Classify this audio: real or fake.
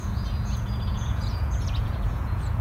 fake